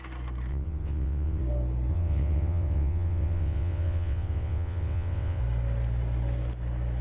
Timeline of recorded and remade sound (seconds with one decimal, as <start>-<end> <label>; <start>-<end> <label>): 0.0-0.5 recorded; 0.5-1.4 remade; 1.4-1.9 recorded; 1.9-5.4 remade; 5.4-7.0 recorded